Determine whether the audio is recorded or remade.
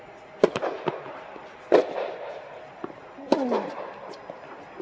recorded